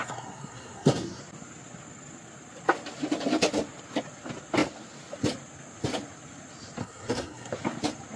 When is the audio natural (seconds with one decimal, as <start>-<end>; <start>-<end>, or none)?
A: 1.2-6.8; 7.5-8.2